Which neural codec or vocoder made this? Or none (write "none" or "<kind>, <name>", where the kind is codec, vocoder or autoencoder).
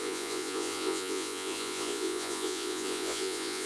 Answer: vocoder, Vocos